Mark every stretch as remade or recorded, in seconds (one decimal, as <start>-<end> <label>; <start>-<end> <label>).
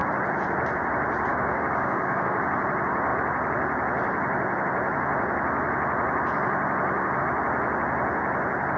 0.0-1.3 recorded; 1.3-2.4 remade; 2.4-8.8 recorded